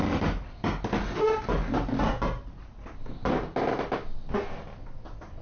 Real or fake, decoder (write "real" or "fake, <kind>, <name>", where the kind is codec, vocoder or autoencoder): real